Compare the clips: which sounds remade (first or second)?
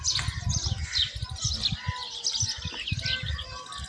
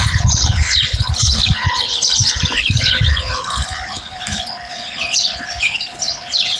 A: second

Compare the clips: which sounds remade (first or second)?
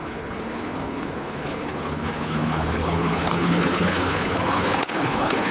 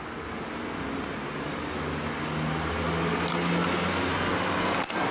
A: first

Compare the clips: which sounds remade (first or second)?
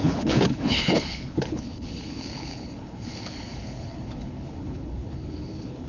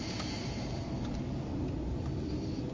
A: first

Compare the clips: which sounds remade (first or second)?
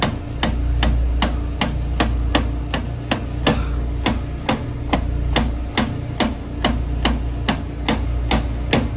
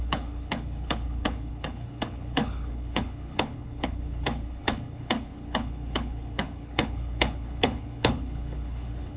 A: second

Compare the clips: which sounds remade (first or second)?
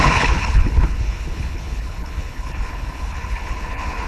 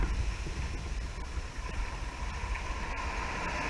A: first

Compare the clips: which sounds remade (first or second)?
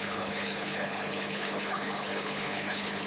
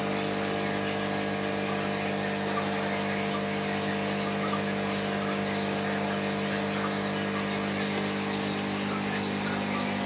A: first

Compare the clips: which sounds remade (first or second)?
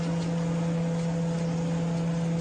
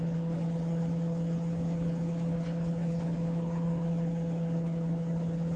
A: second